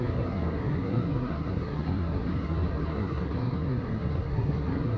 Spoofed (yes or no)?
yes